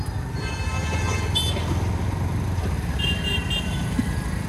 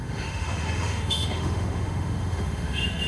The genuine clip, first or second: first